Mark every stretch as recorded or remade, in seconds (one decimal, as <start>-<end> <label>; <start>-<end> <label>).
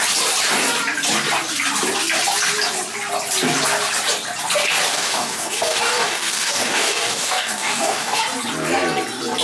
0.0-4.9 recorded; 4.9-8.2 remade; 8.2-9.4 recorded